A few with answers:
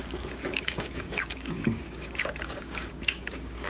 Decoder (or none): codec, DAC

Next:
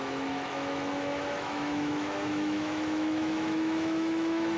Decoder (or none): autoencoder, DAC-VAE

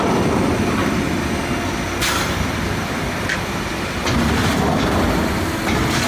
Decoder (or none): none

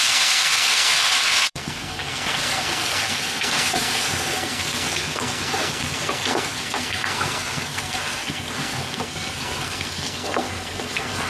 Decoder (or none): codec, SNAC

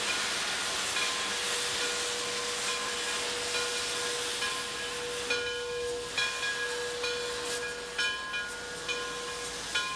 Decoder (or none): none